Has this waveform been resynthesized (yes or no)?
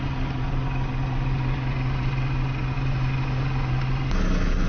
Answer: no